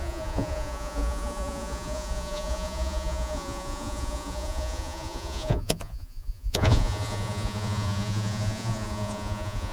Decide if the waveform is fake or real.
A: fake